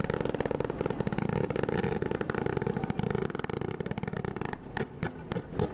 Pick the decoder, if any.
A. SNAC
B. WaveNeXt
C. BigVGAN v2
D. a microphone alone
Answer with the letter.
D